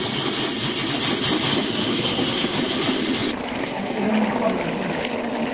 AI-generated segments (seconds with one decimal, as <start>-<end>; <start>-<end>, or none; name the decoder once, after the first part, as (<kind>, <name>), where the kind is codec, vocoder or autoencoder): 1.9-2.6 (codec, SNAC); 3.6-4.1